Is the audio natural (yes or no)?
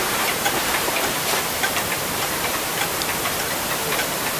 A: no